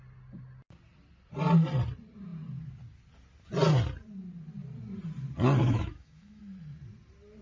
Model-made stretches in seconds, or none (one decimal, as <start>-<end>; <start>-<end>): 5.6-6.4